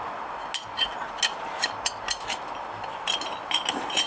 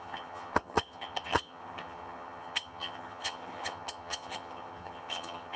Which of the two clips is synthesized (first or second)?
second